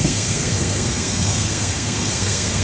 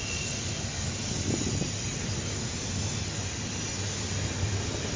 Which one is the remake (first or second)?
first